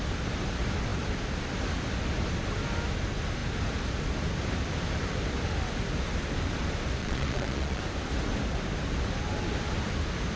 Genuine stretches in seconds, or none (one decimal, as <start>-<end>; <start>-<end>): 0.0-7.0; 7.8-10.4